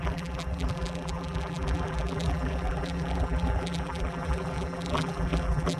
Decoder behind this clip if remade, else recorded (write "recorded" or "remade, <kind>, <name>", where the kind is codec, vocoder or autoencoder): remade, vocoder, BigVGAN v2